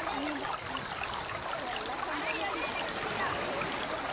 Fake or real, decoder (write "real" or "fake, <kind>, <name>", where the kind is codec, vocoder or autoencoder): real